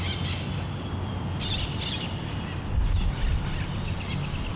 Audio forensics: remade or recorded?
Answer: recorded